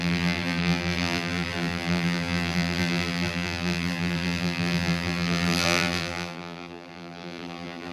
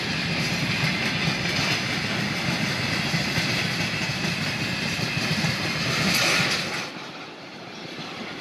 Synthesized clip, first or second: first